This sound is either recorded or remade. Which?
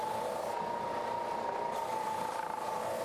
recorded